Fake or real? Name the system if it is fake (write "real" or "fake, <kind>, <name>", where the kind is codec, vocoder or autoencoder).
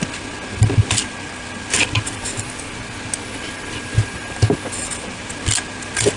real